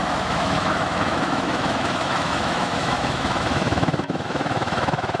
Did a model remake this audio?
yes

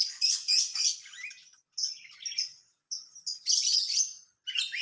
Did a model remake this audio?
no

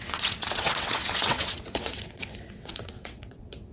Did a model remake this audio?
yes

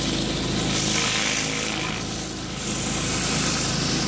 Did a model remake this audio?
no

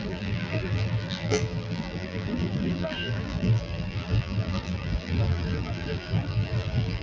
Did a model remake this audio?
yes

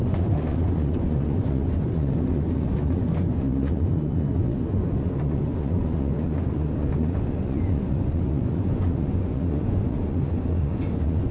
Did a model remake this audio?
yes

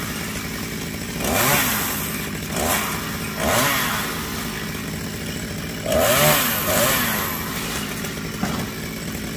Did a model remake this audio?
no